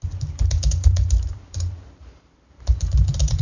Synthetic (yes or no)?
yes